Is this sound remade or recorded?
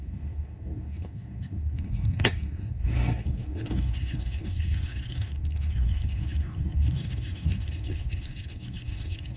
remade